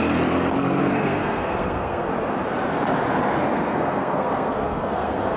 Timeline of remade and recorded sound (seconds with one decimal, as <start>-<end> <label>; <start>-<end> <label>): 0.0-0.8 recorded; 0.8-2.1 remade; 2.1-3.5 recorded; 3.5-5.4 remade